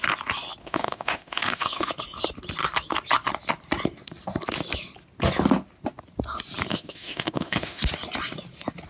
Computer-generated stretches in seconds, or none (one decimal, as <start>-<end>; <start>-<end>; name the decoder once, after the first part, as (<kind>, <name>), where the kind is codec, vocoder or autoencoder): 0.6-1.9 (autoencoder, DAC-VAE); 6.7-7.8